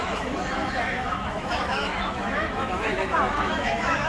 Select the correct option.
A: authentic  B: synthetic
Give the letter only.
B